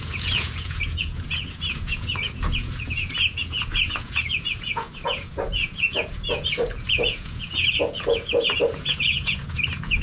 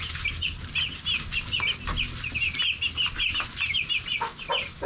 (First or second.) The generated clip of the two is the first